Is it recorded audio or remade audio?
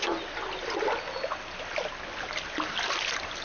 recorded